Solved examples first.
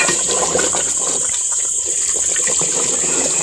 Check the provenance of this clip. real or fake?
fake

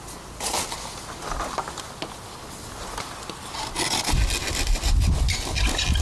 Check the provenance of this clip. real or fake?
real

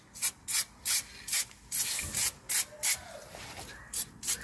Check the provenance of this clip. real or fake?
real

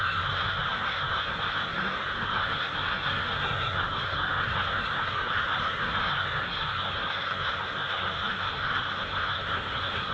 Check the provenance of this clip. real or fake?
fake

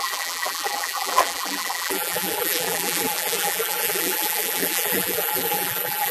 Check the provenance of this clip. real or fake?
fake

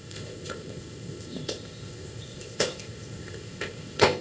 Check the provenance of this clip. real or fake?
fake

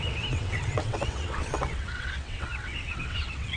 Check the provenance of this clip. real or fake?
fake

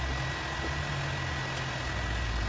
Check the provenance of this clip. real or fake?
real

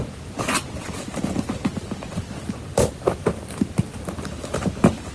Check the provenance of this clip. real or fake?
real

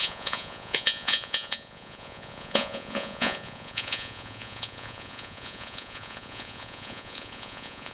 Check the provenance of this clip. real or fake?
fake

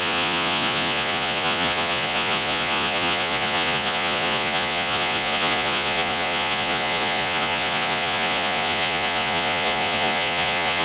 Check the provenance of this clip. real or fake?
fake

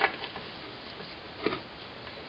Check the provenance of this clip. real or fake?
real